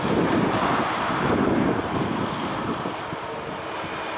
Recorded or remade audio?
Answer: recorded